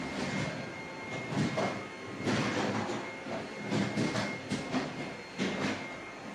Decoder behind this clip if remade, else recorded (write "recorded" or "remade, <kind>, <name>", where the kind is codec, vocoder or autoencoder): recorded